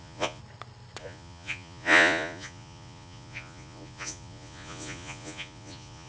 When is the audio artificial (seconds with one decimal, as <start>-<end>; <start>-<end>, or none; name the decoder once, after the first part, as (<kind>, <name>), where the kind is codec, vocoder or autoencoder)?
0.0-0.4 (vocoder, Vocos); 1.0-6.1